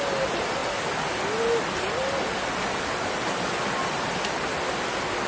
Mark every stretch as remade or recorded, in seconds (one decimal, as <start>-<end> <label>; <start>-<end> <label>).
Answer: 0.0-5.3 recorded